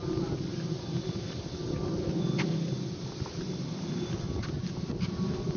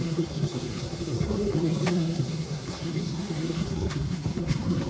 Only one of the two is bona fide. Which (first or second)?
first